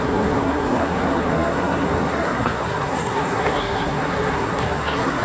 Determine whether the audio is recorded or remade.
remade